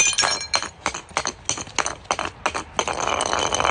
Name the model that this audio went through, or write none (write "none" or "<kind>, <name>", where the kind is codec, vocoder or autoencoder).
none